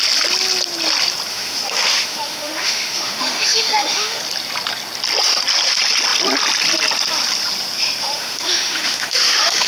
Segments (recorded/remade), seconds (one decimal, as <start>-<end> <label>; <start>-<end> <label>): 0.0-1.3 recorded; 1.3-4.2 remade; 4.2-8.0 recorded; 8.0-9.7 remade